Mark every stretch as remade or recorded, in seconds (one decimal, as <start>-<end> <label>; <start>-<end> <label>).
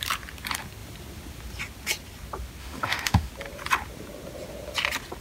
0.0-2.6 recorded; 2.6-3.3 remade; 3.3-5.2 recorded